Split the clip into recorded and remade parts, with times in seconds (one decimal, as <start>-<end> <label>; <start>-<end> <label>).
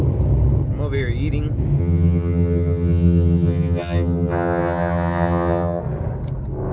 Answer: 0.0-1.8 recorded; 1.8-5.8 remade; 5.8-6.7 recorded